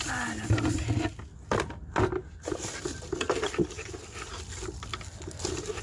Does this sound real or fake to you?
real